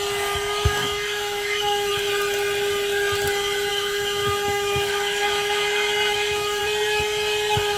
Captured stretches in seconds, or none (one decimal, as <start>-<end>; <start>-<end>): 0.0-0.8; 1.9-3.7; 6.6-7.8